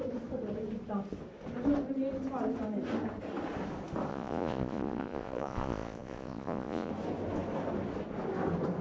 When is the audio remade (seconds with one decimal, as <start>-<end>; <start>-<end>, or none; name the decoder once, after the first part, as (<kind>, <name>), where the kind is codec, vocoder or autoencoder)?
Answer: 4.1-6.9 (vocoder, Vocos)